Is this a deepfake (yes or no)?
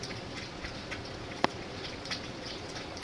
yes